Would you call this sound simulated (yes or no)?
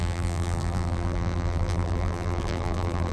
yes